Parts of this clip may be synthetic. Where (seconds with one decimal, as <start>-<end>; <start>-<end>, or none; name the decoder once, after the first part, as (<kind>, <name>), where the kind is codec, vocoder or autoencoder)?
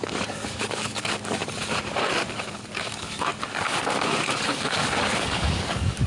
0.0-1.4 (codec, DAC); 2.3-6.1